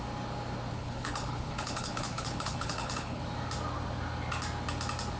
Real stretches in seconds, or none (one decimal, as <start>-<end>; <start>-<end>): 0.0-0.7; 3.2-5.2